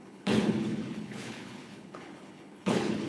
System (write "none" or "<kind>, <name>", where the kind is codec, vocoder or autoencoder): codec, HILCodec